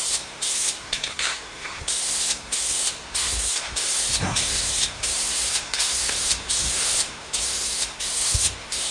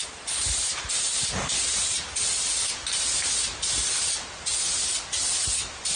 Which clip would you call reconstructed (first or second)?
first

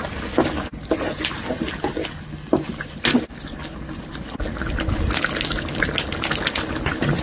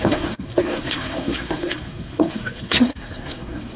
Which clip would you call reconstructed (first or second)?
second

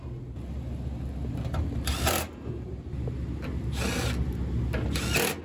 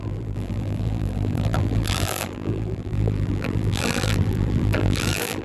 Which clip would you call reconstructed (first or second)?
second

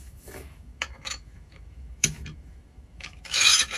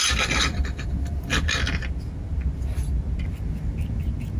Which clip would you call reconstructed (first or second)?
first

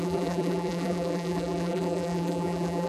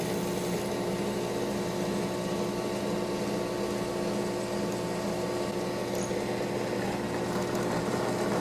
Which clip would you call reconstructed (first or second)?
first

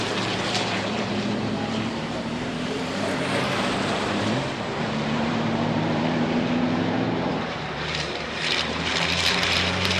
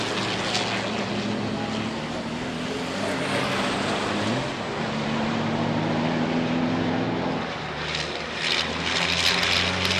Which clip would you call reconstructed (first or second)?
first